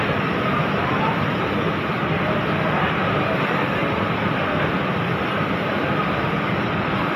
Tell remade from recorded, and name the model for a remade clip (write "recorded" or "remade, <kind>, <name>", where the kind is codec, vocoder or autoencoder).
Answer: remade, vocoder, BigVGAN v2